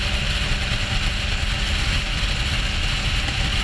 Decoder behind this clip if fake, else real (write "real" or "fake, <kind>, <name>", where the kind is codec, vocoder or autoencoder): real